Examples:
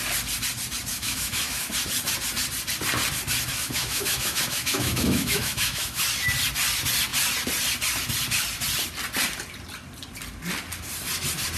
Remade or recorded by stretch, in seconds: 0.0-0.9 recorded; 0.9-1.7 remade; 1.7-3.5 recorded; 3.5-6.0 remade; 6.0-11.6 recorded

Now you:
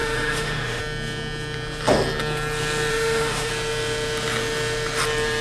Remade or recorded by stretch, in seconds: 0.0-0.8 remade; 0.8-2.9 recorded; 2.9-3.5 remade; 3.5-5.4 recorded

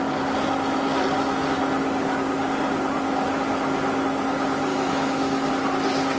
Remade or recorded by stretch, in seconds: 0.0-4.7 recorded; 4.7-5.5 remade; 5.5-6.2 recorded

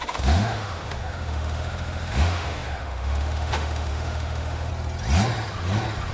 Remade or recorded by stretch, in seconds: 0.0-4.7 remade; 4.7-6.1 recorded

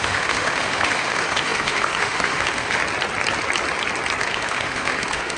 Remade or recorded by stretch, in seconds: 0.0-2.8 remade; 2.8-4.2 recorded; 4.2-5.4 remade

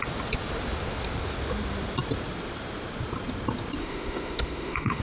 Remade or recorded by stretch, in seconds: 0.0-3.8 recorded; 3.8-5.0 remade

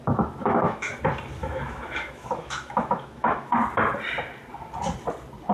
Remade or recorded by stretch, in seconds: 0.0-0.4 recorded; 0.4-1.0 remade; 1.0-1.4 recorded; 1.4-3.6 remade; 3.6-5.5 recorded

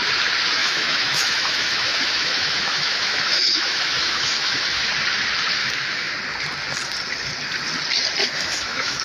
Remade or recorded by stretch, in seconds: 0.0-0.6 recorded; 0.6-4.9 remade; 4.9-5.6 recorded; 5.6-6.1 remade; 6.1-8.2 recorded; 8.2-9.0 remade